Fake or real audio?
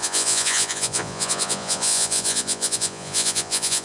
fake